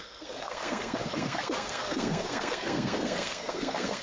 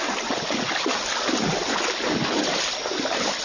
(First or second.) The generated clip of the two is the first